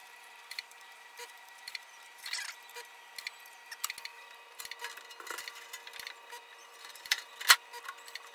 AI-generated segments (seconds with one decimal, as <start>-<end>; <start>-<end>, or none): 0.0-2.5; 4.1-4.6; 6.6-7.3

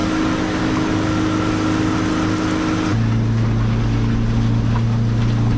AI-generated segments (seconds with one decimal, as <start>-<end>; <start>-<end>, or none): none

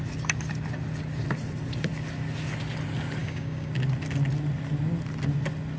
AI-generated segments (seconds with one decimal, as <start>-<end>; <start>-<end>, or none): 3.2-3.7

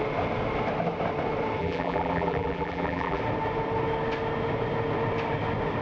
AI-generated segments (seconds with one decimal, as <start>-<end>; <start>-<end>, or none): 1.6-3.2

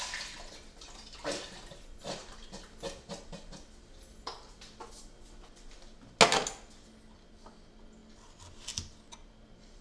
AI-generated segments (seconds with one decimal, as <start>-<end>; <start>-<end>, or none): none

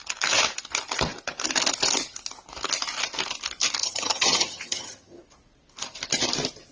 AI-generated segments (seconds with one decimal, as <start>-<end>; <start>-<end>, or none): 3.8-5.2

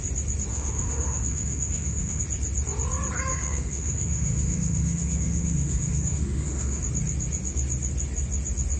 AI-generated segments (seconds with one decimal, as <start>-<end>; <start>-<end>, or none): 0.5-2.2; 3.3-6.8